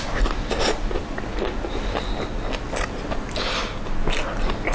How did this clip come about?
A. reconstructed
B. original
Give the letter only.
B